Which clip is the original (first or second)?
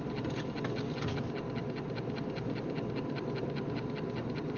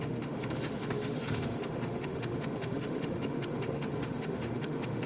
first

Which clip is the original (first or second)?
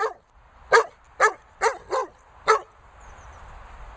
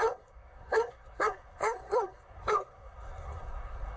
first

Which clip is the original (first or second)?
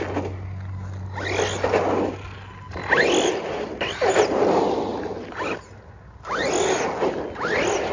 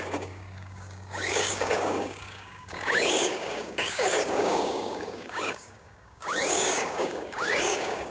first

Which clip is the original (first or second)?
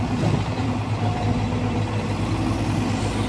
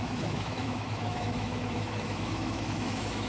first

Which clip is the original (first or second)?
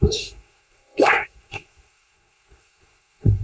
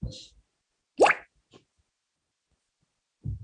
second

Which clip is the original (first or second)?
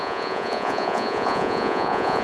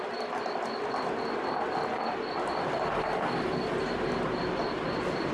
second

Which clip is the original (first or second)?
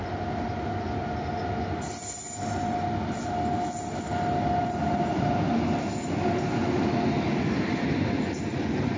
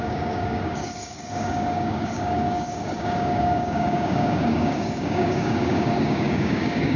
first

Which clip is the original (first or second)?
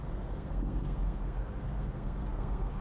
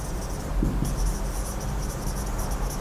second